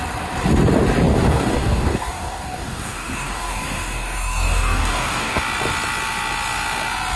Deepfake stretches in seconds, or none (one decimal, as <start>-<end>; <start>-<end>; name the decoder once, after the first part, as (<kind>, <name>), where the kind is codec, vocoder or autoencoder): 1.1-5.4 (codec, DAC)